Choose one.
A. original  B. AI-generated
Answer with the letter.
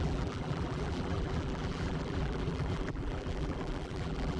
B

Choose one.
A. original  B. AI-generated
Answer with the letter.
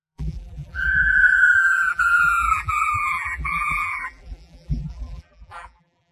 B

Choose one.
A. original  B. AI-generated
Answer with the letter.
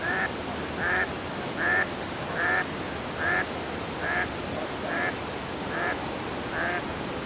A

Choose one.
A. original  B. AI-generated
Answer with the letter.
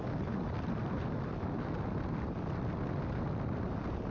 A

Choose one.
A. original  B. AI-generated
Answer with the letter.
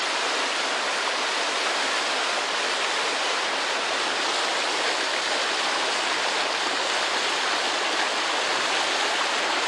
A